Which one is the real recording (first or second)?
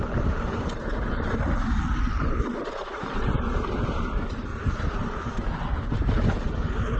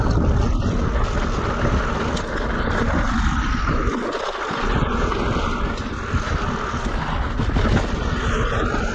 second